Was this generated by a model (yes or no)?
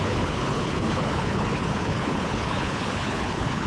yes